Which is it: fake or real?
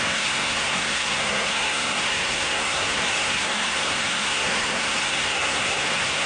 fake